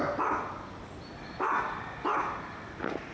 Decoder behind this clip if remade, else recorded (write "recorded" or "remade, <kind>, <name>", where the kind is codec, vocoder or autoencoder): recorded